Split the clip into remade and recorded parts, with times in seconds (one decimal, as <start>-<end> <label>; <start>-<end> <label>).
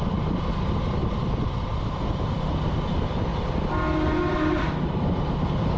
0.0-5.8 recorded